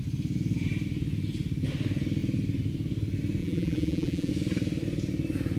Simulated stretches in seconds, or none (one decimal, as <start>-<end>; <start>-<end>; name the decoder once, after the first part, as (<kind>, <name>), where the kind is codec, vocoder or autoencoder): 3.4-4.3 (vocoder, BigVGAN v2)